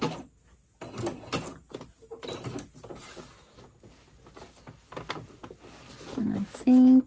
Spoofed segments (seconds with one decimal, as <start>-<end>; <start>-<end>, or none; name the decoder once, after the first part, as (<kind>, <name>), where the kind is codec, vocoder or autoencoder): none